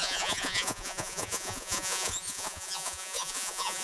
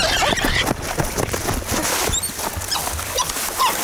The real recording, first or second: second